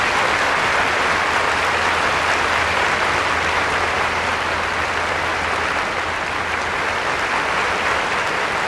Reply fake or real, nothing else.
real